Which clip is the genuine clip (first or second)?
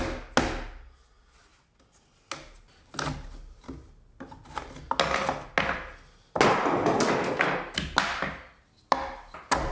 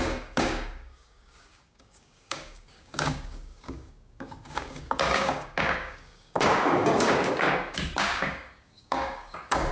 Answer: first